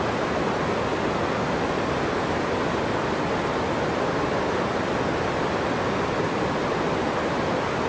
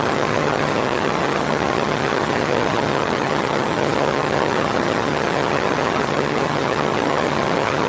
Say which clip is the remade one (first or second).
second